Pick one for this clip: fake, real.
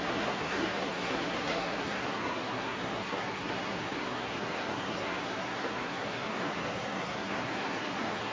fake